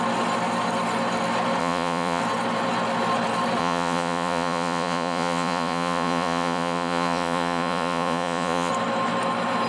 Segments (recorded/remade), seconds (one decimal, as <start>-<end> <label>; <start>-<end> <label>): 0.0-1.6 recorded; 1.6-2.2 remade; 2.2-3.6 recorded; 3.6-8.7 remade; 8.7-9.7 recorded